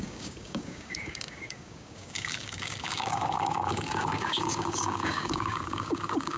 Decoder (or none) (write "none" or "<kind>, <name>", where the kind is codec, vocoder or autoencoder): codec, DAC